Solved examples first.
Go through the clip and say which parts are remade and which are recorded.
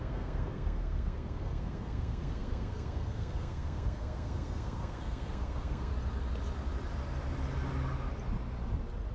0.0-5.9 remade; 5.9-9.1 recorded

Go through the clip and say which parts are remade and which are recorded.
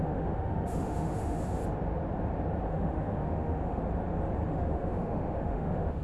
0.0-1.6 remade; 1.6-2.7 recorded; 2.7-3.8 remade; 3.8-4.5 recorded; 4.5-6.0 remade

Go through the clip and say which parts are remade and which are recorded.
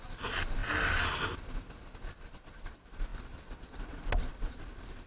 0.0-5.1 recorded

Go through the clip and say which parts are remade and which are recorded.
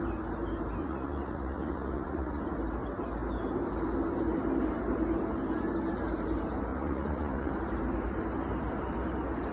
0.0-0.8 recorded; 0.8-2.4 remade; 2.4-6.7 recorded; 6.7-7.5 remade; 7.5-9.5 recorded